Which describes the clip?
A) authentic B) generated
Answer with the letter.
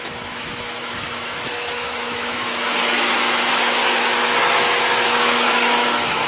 B